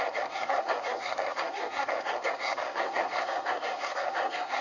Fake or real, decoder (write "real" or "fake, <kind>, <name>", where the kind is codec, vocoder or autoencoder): fake, codec, SNAC